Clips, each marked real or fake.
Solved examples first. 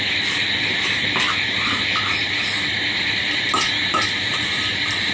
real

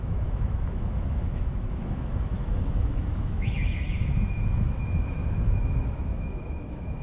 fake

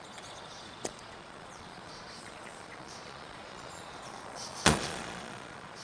fake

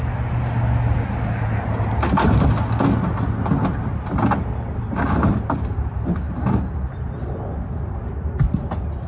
real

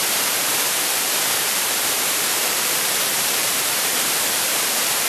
fake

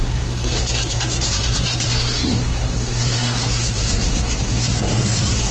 fake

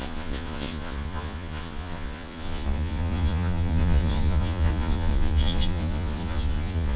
fake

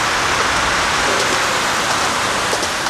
real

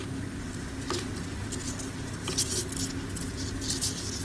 real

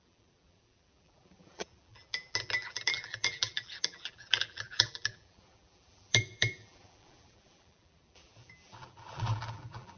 fake